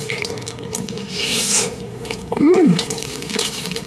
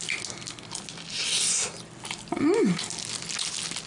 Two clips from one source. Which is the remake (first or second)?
first